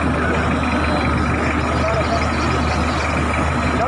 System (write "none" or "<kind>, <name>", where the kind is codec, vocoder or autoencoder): none